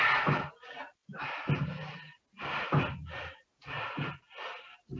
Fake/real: real